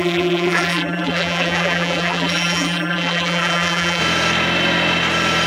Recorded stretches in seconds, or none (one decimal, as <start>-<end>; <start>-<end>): 4.0-5.5